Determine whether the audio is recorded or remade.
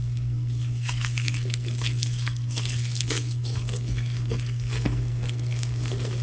remade